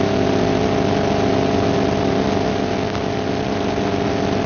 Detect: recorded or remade recorded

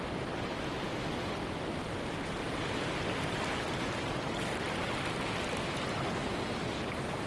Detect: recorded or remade recorded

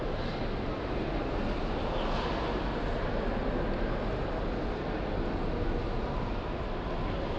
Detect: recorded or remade recorded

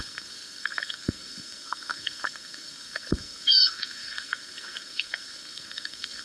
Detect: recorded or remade remade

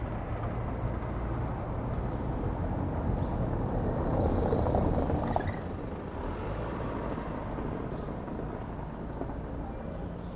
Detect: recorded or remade recorded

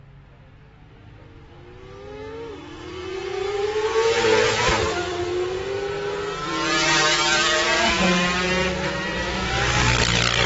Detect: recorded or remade recorded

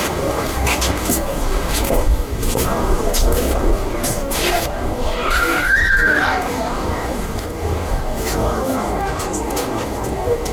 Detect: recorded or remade remade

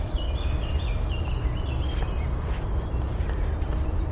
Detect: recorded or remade recorded